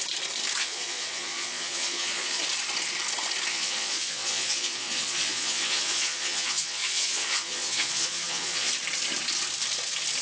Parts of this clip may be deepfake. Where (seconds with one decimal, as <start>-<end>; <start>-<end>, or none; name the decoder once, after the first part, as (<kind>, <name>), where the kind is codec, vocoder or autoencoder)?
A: 0.6-2.4 (vocoder, Vocos); 3.5-8.7